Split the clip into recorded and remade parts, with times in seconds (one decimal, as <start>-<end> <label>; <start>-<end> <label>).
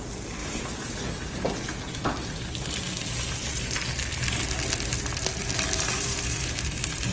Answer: 0.0-7.1 recorded